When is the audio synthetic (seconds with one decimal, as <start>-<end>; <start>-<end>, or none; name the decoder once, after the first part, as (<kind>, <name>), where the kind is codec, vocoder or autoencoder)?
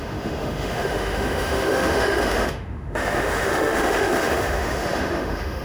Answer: 0.0-5.6 (autoencoder, DAC-VAE)